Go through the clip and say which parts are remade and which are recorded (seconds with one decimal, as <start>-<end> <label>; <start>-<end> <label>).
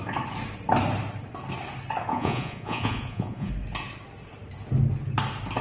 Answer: 0.0-2.1 recorded; 2.1-3.5 remade; 3.5-5.6 recorded